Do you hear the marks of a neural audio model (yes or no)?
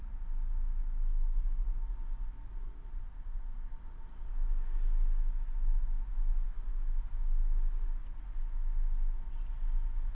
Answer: no